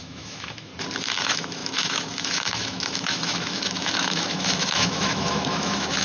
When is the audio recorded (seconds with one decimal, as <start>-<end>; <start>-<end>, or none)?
0.7-1.2